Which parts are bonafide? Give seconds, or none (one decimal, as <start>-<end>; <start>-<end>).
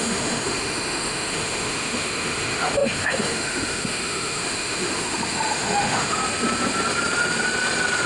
6.2-8.1